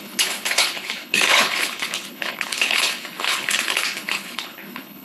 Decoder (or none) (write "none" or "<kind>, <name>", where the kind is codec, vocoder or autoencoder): codec, HILCodec